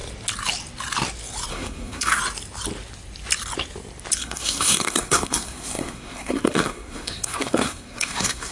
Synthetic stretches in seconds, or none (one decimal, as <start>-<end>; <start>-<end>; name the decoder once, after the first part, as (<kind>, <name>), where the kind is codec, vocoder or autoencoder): 1.5-2.2 (codec, SNAC); 4.2-8.5